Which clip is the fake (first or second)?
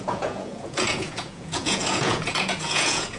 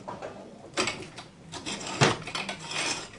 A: first